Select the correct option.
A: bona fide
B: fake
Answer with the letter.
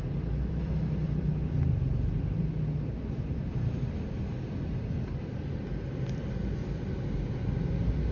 A